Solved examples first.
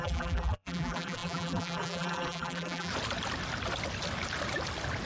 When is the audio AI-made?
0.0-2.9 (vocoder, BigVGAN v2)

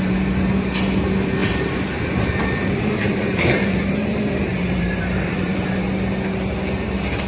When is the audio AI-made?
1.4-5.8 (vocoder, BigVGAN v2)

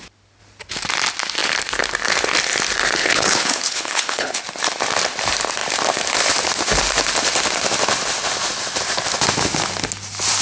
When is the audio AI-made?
3.0-4.4 (codec, HILCodec)